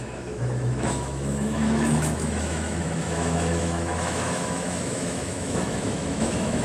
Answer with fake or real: fake